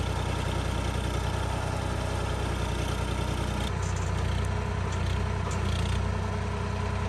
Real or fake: real